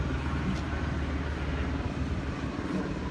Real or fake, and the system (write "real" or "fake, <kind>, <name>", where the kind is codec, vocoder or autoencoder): real